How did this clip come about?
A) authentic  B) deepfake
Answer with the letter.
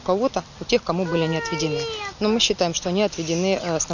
A